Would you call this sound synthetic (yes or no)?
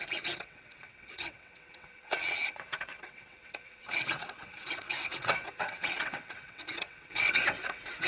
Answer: yes